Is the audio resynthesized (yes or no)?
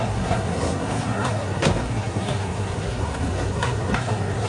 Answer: yes